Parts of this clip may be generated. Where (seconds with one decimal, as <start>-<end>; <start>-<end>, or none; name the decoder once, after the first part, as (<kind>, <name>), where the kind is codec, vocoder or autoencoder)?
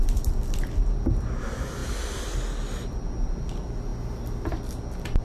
none